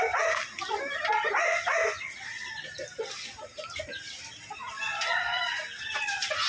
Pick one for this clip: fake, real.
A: real